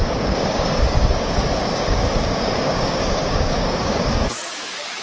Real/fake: fake